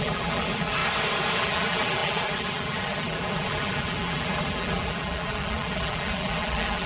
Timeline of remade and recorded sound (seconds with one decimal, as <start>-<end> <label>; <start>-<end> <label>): 0.0-0.8 remade; 0.8-1.4 recorded; 1.4-6.9 remade